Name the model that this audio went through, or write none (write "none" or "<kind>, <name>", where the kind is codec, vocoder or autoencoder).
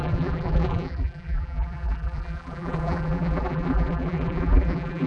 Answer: vocoder, BigVGAN v2